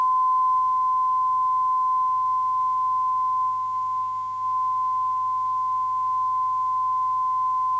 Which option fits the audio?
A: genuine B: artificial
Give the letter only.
B